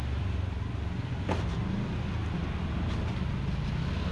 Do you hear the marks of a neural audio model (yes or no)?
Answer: no